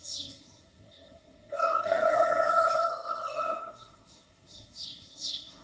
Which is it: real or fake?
fake